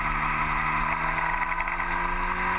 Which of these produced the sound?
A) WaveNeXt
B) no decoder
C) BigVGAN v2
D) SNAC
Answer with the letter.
B